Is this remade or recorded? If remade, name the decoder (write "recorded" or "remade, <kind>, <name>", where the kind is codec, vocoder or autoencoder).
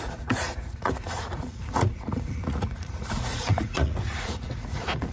remade, vocoder, Vocos